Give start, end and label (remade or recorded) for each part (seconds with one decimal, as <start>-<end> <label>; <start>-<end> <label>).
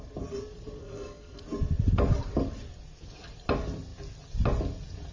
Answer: 0.0-0.8 recorded; 0.8-1.4 remade; 1.4-5.1 recorded